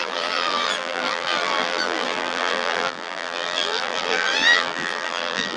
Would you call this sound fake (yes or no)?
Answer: yes